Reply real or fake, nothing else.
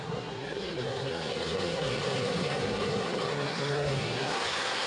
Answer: fake